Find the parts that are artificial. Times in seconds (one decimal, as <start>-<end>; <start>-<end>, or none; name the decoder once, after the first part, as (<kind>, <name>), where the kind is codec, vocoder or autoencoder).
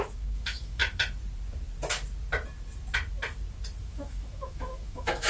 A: 0.0-0.8 (autoencoder, DAC-VAE); 3.8-5.3